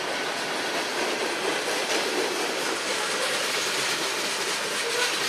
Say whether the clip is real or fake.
real